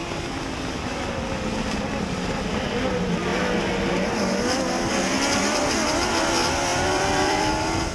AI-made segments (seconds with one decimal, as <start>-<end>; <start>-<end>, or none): 6.7-7.5